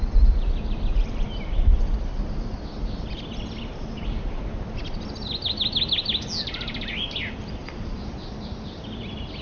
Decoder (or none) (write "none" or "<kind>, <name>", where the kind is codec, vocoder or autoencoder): none